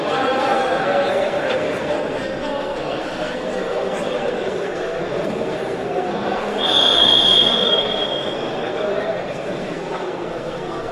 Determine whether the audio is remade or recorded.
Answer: remade